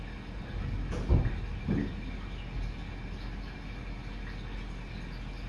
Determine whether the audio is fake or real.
real